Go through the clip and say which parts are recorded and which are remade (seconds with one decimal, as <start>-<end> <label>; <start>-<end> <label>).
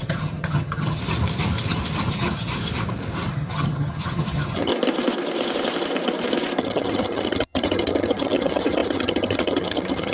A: 0.0-1.0 remade; 1.0-2.1 recorded; 2.1-2.5 remade; 2.5-3.3 recorded; 3.3-4.7 remade; 4.7-6.6 recorded; 6.6-10.1 remade